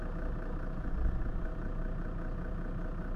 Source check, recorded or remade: recorded